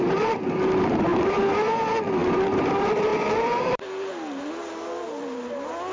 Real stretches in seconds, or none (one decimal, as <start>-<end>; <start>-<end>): 0.0-5.9